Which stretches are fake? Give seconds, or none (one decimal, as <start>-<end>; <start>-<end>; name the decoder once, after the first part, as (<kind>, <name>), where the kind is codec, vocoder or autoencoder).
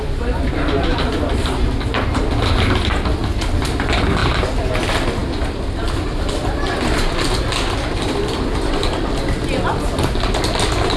none